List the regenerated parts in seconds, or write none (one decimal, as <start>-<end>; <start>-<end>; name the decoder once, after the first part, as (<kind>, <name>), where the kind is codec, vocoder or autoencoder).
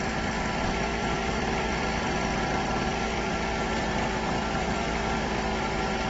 0.0-5.5 (vocoder, BigVGAN v2)